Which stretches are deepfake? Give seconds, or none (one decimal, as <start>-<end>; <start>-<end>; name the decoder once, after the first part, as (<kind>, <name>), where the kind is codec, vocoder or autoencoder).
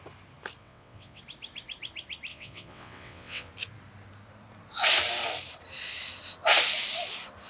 0.6-1.2 (vocoder, WaveNeXt); 2.3-3.5